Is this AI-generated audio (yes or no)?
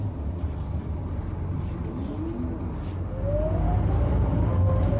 no